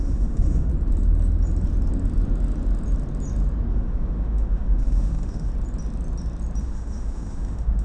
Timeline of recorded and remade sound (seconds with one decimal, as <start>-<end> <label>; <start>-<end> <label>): 0.0-0.7 remade; 0.7-3.7 recorded; 3.7-5.5 remade; 5.5-6.6 recorded; 6.6-7.8 remade